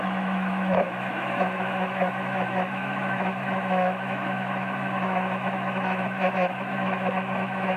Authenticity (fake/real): fake